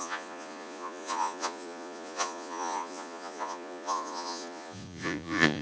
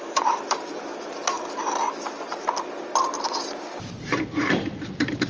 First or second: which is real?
second